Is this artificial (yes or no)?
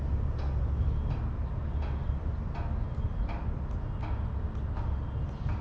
no